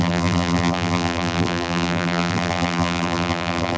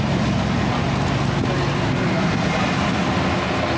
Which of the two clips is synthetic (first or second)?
first